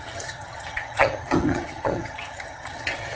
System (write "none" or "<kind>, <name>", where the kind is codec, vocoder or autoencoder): vocoder, HiFi-GAN